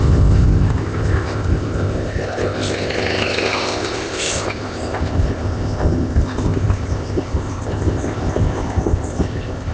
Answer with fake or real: fake